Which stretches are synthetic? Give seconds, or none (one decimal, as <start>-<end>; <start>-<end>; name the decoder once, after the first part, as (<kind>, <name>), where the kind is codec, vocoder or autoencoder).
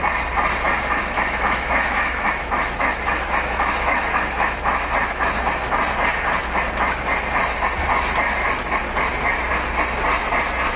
1.0-5.3 (autoencoder, DAC-VAE)